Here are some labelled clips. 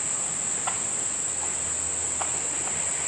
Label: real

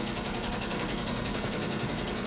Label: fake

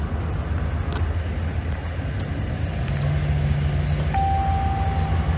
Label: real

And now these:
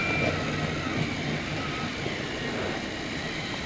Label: real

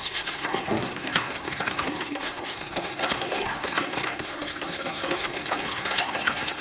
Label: fake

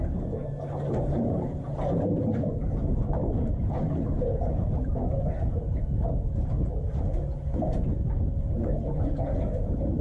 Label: real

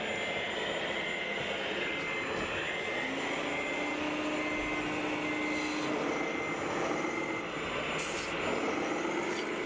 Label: real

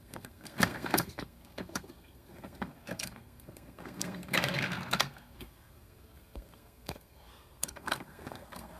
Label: fake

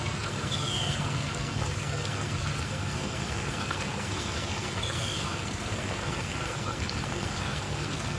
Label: fake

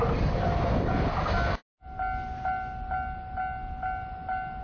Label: real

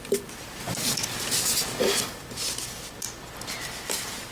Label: real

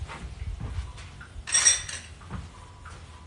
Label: real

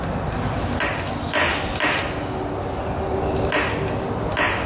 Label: real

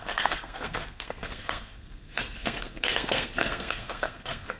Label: fake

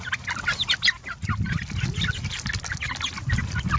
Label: real